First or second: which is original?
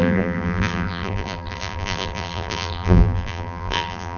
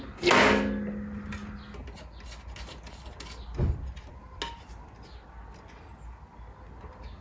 second